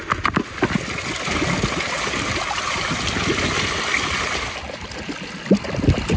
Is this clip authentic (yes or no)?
yes